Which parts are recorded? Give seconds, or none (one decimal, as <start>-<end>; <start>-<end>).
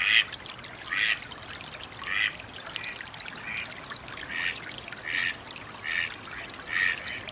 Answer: 0.0-7.3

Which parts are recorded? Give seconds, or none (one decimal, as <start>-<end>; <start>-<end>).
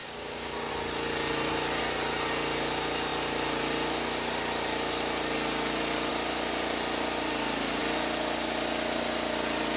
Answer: 0.7-9.8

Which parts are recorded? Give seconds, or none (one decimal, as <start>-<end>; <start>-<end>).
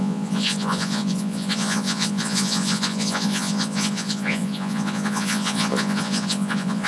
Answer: none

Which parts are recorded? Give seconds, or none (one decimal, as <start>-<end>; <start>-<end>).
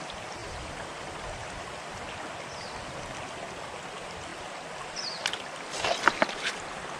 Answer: 0.0-0.4; 2.0-7.0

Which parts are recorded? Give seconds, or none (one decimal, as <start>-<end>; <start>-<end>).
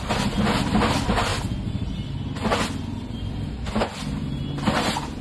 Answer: 0.0-5.2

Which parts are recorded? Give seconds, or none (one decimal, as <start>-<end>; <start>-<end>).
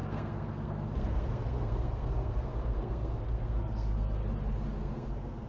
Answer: 4.2-4.8